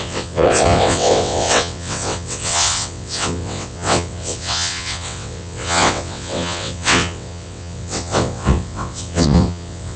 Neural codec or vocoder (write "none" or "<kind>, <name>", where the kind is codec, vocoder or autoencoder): vocoder, WaveNeXt